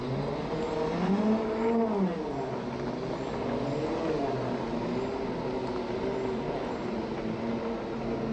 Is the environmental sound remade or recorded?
recorded